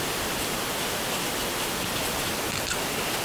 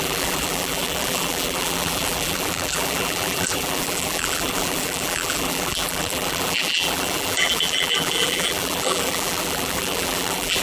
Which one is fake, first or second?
second